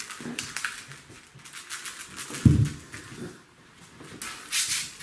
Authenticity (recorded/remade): recorded